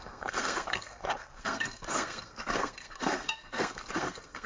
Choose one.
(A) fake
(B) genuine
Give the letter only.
A